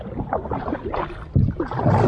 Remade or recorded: recorded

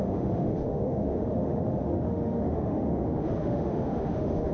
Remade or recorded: remade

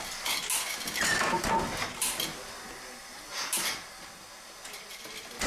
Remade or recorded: recorded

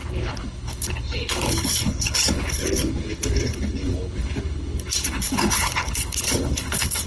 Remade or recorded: remade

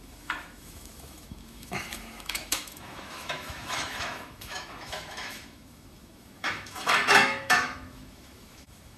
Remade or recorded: remade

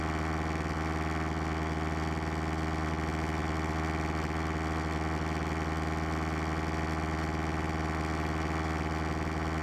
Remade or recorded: recorded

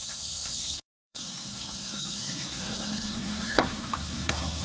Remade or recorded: remade